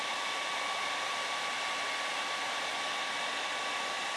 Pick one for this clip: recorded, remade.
recorded